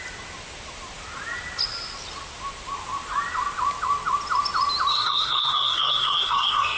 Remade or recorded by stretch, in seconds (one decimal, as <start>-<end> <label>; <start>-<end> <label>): 0.0-4.9 recorded; 4.9-6.8 remade